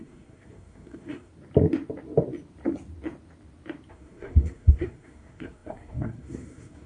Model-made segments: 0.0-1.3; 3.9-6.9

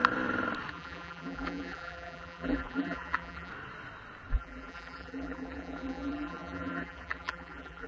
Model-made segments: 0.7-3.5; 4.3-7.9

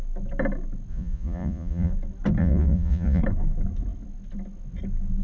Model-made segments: 0.9-1.9; 2.4-3.2